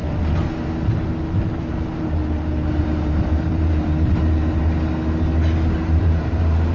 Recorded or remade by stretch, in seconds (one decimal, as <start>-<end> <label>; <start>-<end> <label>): 0.0-1.3 recorded; 1.3-2.2 remade; 2.2-2.8 recorded; 2.8-4.6 remade; 4.6-6.0 recorded; 6.0-6.7 remade